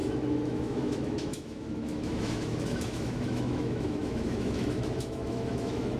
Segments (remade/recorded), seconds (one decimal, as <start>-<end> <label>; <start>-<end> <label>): 0.0-6.0 remade